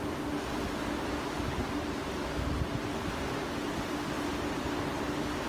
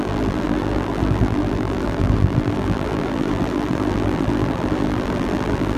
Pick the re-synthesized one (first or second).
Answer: second